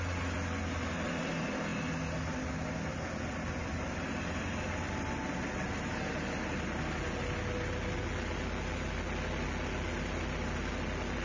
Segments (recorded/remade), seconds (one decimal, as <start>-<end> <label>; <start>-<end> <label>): 0.0-11.2 recorded